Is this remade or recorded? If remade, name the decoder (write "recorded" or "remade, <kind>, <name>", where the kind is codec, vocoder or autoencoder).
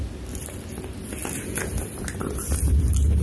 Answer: recorded